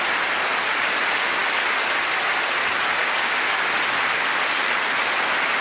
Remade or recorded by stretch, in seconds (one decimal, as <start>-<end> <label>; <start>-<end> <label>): 0.0-3.0 recorded; 3.0-3.7 remade; 3.7-5.6 recorded

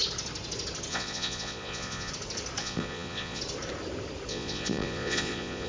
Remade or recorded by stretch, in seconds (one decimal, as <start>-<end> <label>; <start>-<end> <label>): 0.0-0.9 recorded; 0.9-2.1 remade; 2.1-2.6 recorded; 2.6-3.4 remade; 3.4-4.3 recorded; 4.3-5.7 remade

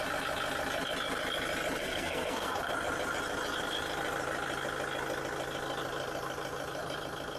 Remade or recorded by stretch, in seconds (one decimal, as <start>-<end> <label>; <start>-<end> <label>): 0.0-1.8 recorded; 1.8-2.7 remade; 2.7-7.4 recorded

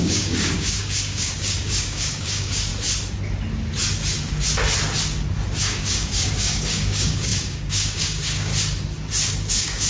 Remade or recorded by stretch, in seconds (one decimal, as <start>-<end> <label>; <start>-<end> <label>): 0.0-2.7 remade; 2.7-5.6 recorded; 5.6-8.5 remade; 8.5-9.5 recorded; 9.5-9.9 remade

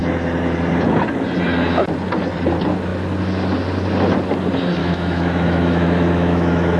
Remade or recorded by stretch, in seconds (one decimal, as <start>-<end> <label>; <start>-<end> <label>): 0.0-4.8 recorded; 4.8-6.8 remade

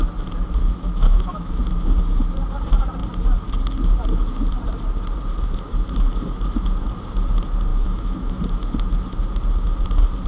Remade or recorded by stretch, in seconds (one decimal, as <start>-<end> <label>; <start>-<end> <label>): 0.0-0.6 recorded; 0.6-1.6 remade; 1.6-7.7 recorded; 7.7-8.4 remade; 8.4-10.3 recorded

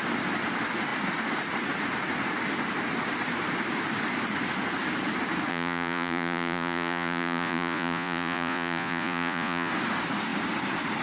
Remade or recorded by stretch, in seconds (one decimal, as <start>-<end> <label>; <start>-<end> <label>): 0.0-5.5 recorded; 5.5-9.7 remade; 9.7-11.0 recorded

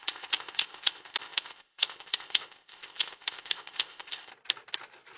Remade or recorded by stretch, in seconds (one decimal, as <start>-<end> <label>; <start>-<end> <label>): 0.0-4.3 remade; 4.3-5.2 recorded